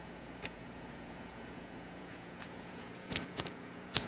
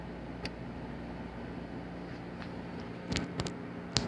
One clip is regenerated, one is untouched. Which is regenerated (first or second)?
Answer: first